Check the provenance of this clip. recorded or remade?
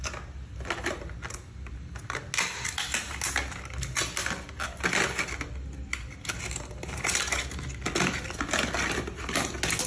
recorded